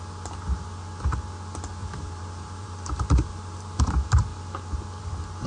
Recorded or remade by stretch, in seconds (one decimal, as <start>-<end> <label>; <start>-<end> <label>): 0.0-1.8 recorded; 1.8-3.8 remade; 3.8-5.5 recorded